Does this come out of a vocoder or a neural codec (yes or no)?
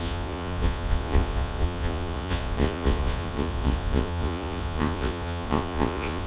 yes